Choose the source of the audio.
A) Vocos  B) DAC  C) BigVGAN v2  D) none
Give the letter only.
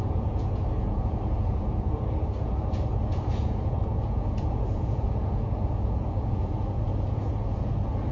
A